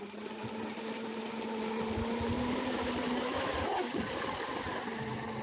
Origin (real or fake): real